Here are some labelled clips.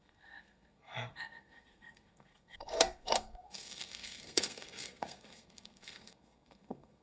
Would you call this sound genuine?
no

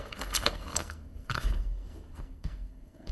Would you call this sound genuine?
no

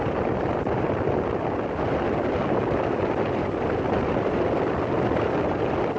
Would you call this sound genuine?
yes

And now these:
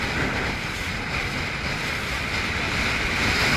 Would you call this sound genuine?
yes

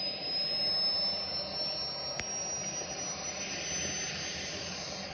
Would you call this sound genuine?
yes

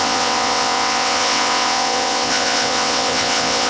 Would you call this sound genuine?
no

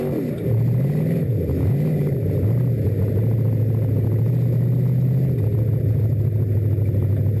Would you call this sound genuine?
yes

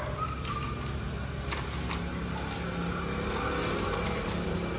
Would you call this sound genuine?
yes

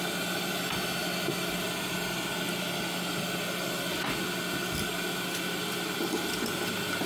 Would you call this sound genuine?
yes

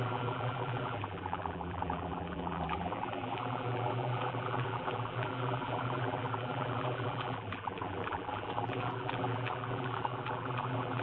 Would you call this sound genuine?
no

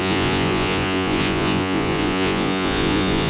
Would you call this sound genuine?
no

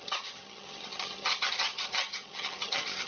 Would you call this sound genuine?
no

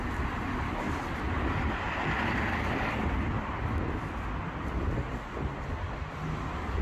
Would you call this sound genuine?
yes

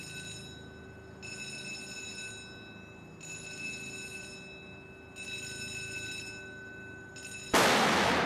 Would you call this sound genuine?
yes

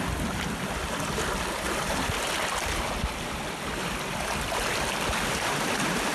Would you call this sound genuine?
yes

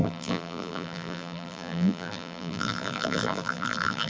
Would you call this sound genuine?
no